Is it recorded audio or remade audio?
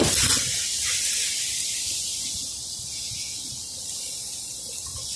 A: recorded